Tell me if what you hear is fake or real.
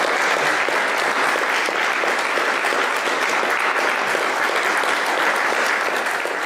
real